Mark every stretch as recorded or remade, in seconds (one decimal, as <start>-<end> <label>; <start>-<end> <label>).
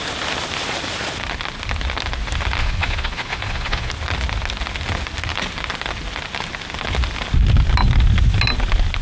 0.0-2.6 recorded; 2.6-3.9 remade; 3.9-9.0 recorded